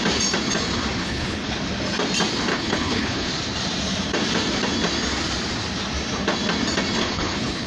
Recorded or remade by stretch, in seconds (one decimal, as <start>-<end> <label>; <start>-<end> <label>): 0.0-1.0 recorded; 1.0-1.5 remade; 1.5-2.5 recorded; 2.5-3.3 remade; 3.3-7.0 recorded; 7.0-7.7 remade

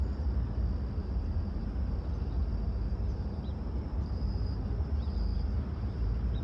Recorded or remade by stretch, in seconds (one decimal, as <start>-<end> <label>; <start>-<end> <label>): 0.0-1.0 recorded; 1.0-2.0 remade; 2.0-2.5 recorded; 2.5-4.8 remade; 4.8-5.3 recorded; 5.3-6.4 remade

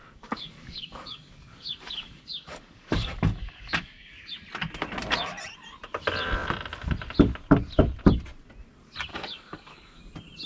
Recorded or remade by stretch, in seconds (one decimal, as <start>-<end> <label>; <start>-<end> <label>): 0.0-4.3 remade; 4.3-9.1 recorded; 9.1-10.0 remade; 10.0-10.5 recorded

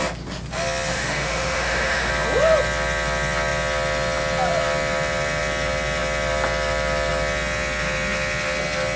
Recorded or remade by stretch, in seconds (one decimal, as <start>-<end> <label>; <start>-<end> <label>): 0.0-0.9 recorded; 0.9-2.1 remade; 2.1-9.0 recorded